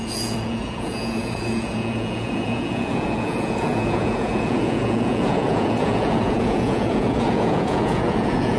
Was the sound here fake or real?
fake